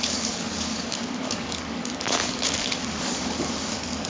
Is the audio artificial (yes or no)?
yes